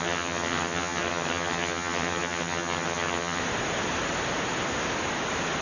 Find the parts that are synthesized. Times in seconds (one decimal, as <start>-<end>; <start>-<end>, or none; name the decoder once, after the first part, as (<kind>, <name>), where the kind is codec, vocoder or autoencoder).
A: 0.0-3.4 (vocoder, HiFi-GAN)